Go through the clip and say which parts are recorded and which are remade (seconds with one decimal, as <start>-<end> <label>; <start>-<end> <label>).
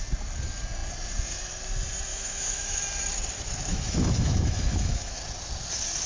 0.0-2.1 recorded; 2.1-2.8 remade; 2.8-3.7 recorded; 3.7-5.2 remade; 5.2-6.1 recorded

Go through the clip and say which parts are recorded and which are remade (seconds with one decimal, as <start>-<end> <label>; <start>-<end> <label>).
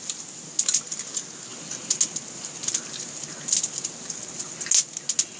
0.0-5.4 recorded